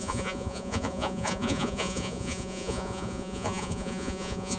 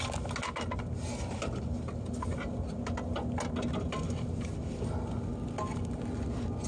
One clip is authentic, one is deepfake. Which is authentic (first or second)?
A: second